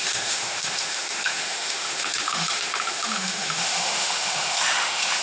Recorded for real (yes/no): no